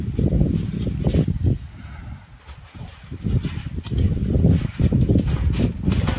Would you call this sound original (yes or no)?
yes